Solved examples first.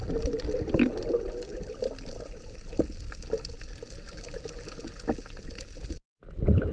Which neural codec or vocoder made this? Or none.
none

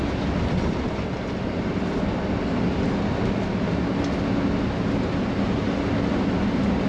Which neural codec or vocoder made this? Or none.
none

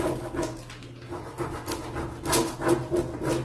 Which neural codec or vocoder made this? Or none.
none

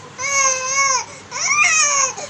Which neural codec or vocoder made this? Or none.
none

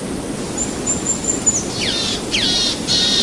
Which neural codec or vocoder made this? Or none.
none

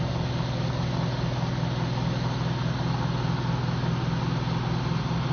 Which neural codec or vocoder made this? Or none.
none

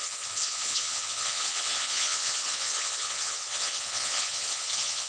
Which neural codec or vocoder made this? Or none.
vocoder, Vocos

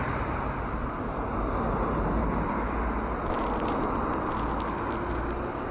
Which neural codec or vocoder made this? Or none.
none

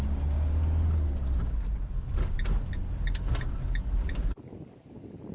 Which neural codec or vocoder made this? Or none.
none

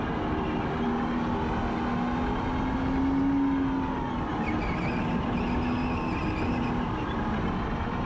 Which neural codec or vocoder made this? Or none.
none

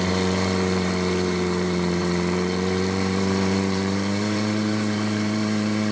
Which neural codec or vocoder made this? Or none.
vocoder, BigVGAN v2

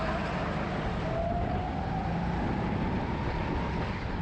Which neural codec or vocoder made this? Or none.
none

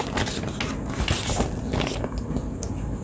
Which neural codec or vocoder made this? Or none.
none